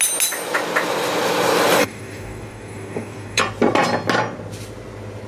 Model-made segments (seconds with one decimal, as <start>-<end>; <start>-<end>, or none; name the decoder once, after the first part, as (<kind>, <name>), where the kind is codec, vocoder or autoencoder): 1.8-3.4 (codec, DAC)